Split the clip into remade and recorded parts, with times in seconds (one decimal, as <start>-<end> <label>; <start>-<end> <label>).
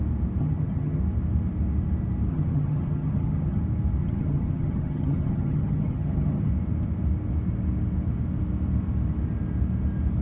0.0-0.4 recorded; 0.4-1.0 remade; 1.0-2.3 recorded; 2.3-3.6 remade; 3.6-4.0 recorded; 4.0-6.5 remade; 6.5-10.2 recorded